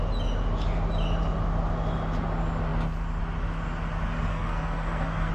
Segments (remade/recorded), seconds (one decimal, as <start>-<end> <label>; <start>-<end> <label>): 0.0-4.3 recorded; 4.3-5.3 remade